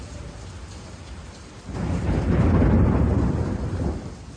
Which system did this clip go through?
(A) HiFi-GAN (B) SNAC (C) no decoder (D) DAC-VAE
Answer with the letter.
C